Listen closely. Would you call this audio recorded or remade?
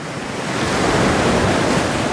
recorded